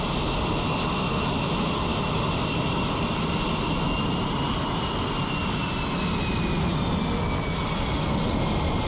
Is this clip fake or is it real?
real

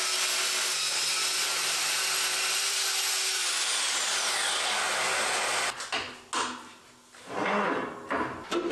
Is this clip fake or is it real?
real